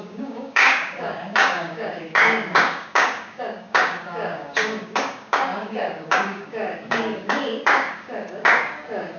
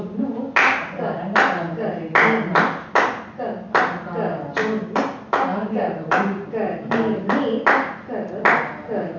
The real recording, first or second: second